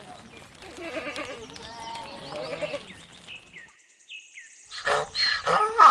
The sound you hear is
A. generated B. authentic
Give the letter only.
B